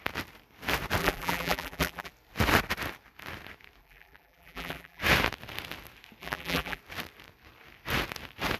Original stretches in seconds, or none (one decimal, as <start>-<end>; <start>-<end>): 0.0-1.0; 2.1-3.8; 5.0-6.2; 6.8-8.6